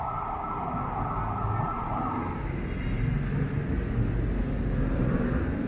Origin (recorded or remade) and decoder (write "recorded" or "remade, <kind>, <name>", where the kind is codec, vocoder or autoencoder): recorded